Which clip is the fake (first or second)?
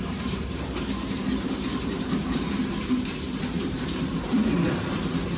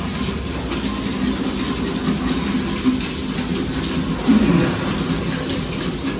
first